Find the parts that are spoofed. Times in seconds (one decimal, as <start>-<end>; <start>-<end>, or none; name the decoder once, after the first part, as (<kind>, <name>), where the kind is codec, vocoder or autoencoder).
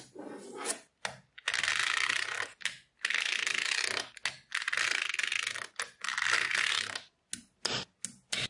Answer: none